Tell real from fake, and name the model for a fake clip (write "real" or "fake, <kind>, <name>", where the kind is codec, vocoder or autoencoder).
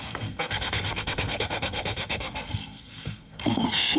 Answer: fake, codec, SNAC